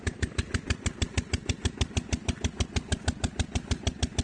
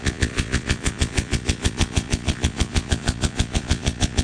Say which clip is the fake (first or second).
second